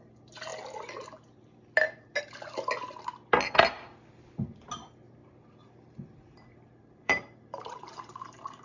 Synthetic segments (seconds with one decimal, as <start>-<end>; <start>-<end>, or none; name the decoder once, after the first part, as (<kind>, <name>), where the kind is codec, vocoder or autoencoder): 5.2-8.6 (vocoder, BigVGAN v2)

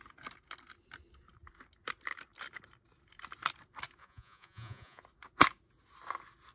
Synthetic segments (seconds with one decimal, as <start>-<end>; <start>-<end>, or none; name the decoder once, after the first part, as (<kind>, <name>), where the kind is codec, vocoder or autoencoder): 4.0-5.0 (vocoder, Vocos)

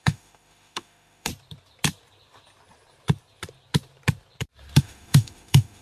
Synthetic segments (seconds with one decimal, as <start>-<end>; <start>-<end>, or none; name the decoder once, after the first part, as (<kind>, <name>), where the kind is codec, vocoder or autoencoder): 0.0-1.3 (autoencoder, DAC-VAE); 4.8-5.8

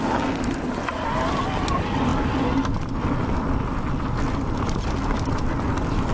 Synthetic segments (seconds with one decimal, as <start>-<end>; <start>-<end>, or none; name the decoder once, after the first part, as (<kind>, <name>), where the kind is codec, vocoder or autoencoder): none